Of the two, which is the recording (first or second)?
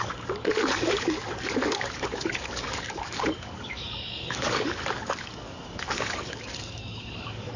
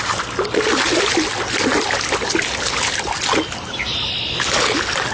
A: second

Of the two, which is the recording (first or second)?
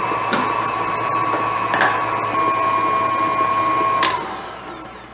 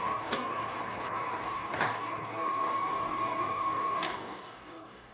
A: first